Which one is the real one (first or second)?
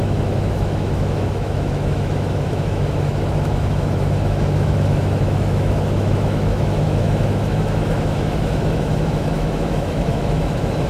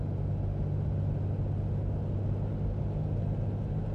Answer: second